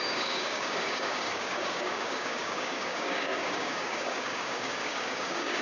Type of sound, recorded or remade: remade